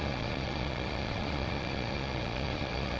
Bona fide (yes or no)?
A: no